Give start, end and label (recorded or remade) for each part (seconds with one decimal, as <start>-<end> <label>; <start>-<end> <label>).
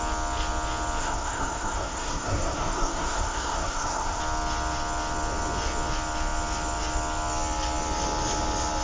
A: 0.0-1.0 recorded; 1.0-4.2 remade; 4.2-8.8 recorded